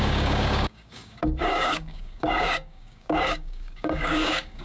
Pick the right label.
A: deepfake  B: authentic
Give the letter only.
A